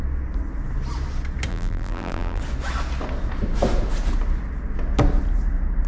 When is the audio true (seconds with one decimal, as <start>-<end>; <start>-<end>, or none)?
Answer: 0.0-1.5; 2.4-5.9